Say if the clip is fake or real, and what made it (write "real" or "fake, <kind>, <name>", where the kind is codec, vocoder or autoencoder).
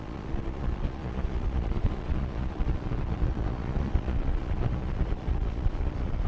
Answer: fake, vocoder, Vocos